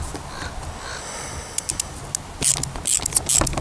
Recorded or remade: recorded